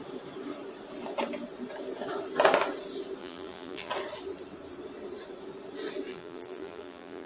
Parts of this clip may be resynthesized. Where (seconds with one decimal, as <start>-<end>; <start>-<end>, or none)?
3.2-3.9; 6.1-7.3